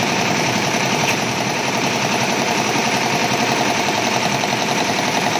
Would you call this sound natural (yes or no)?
no